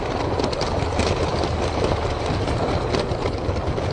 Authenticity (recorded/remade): recorded